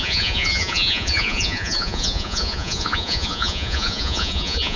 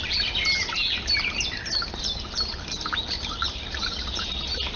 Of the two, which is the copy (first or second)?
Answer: first